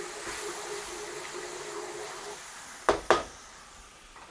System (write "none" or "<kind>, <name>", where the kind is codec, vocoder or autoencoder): none